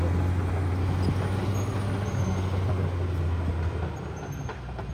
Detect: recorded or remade recorded